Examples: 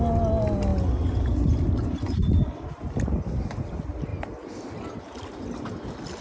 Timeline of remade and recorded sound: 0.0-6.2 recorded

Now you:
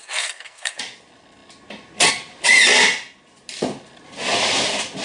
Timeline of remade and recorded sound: 0.0-0.8 remade; 0.8-5.0 recorded

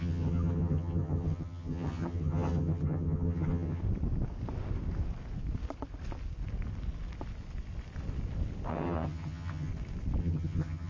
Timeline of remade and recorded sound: 0.0-3.8 remade; 3.8-8.7 recorded; 8.7-9.7 remade; 9.7-10.2 recorded; 10.2-10.9 remade

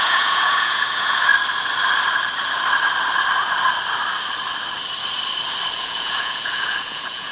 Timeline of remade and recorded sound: 0.0-1.3 remade; 1.3-5.7 recorded; 5.7-7.3 remade

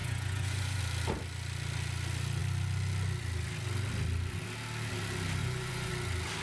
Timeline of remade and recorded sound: 0.0-0.8 remade; 0.8-5.4 recorded; 5.4-5.9 remade; 5.9-6.4 recorded

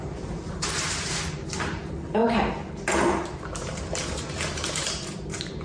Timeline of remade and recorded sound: 0.0-2.2 remade; 2.2-3.2 recorded; 3.2-5.6 remade

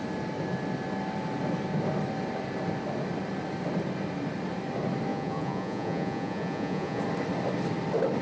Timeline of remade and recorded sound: 0.0-5.1 recorded; 5.1-7.0 remade; 7.0-8.2 recorded

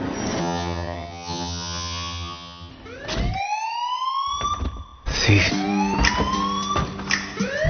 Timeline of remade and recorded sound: 0.0-0.4 recorded; 0.4-2.7 remade; 2.7-7.7 recorded